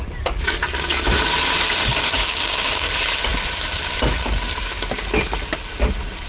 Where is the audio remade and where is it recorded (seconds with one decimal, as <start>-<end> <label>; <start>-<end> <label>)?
0.0-1.8 recorded; 1.8-2.9 remade; 2.9-6.3 recorded